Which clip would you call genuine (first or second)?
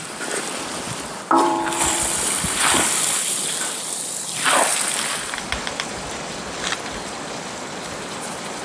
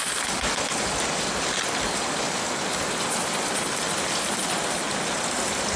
second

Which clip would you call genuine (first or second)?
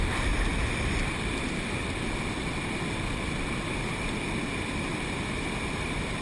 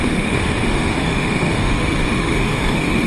first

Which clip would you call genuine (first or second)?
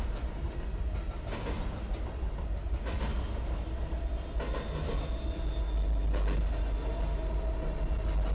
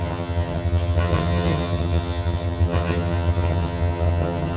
first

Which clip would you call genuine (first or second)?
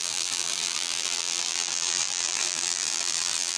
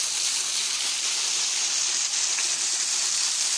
second